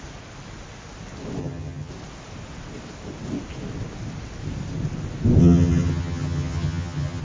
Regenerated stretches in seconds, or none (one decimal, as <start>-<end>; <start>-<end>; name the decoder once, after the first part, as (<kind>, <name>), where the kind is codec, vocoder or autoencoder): 1.4-1.9 (vocoder, HiFi-GAN); 5.4-7.2